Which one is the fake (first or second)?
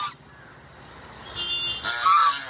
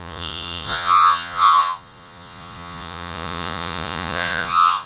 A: second